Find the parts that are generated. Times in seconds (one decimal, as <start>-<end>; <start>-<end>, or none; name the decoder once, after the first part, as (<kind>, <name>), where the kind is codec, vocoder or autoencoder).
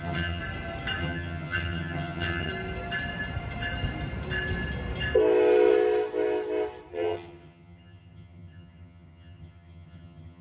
0.0-0.4 (vocoder, HiFi-GAN); 1.0-2.5; 6.9-10.4